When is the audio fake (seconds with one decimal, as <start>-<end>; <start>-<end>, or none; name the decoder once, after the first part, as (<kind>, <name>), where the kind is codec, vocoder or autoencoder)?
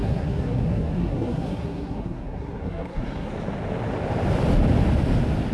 0.0-3.3 (codec, SNAC)